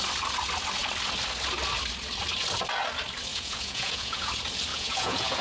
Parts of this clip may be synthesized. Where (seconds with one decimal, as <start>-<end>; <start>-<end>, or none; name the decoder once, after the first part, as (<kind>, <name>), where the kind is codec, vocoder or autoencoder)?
3.3-4.3 (vocoder, Vocos); 4.7-5.4